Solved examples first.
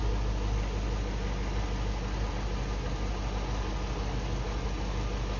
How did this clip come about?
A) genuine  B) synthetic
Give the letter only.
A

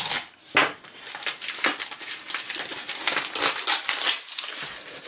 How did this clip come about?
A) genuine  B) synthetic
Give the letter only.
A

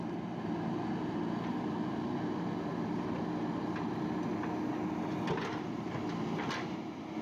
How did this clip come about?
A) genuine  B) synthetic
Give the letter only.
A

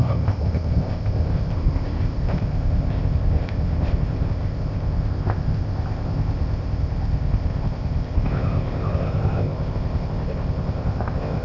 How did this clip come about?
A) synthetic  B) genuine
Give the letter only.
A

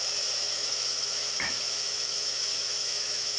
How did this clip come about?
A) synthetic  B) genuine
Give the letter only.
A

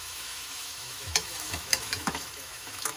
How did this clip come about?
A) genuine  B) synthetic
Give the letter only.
B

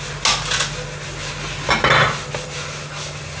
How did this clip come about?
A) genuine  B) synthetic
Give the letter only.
A